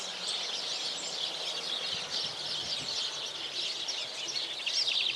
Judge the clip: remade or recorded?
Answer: recorded